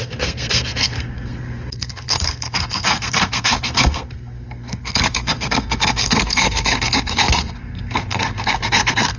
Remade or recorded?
remade